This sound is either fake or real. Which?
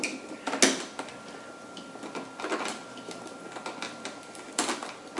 real